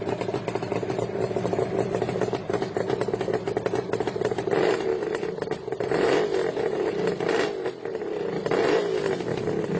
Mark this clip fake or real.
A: real